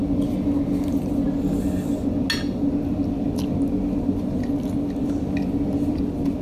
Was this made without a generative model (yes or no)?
yes